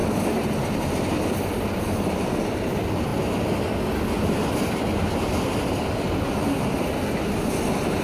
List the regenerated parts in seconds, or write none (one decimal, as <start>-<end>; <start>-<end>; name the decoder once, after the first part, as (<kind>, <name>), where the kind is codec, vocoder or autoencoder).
none